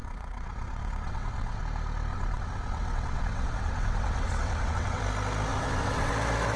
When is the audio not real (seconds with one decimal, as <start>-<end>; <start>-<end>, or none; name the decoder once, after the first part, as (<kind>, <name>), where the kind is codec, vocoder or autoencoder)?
0.0-1.6 (vocoder, WaveNeXt); 2.1-5.0; 5.5-6.1